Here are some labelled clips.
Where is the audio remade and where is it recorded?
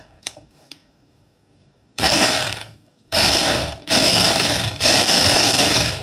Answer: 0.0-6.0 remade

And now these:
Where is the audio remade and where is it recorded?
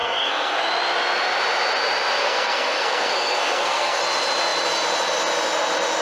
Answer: 0.0-0.6 remade; 0.6-2.2 recorded; 2.2-4.0 remade; 4.0-6.0 recorded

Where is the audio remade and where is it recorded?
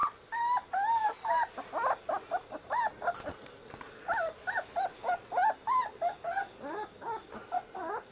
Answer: 0.0-8.1 recorded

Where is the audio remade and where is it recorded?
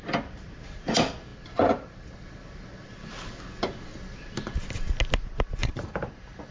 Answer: 0.0-5.6 recorded; 5.6-6.5 remade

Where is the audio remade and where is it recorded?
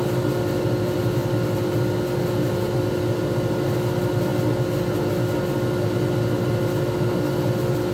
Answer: 0.0-7.9 recorded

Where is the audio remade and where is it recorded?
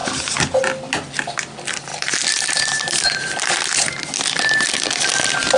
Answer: 0.0-1.9 recorded; 1.9-4.1 remade; 4.1-5.6 recorded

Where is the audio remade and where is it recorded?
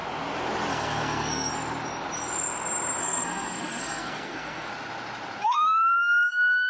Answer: 0.0-0.7 recorded; 0.7-1.5 remade; 1.5-3.0 recorded; 3.0-4.7 remade; 4.7-5.4 recorded; 5.4-6.7 remade